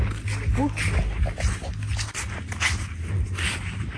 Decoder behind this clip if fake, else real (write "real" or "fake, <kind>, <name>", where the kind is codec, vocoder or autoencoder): real